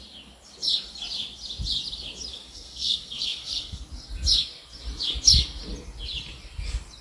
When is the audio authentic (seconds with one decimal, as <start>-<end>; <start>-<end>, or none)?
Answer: 0.0-2.3; 3.8-7.0